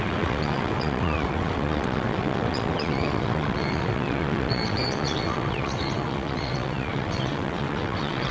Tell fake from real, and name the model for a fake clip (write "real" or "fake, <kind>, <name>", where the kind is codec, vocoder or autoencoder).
fake, vocoder, WaveNeXt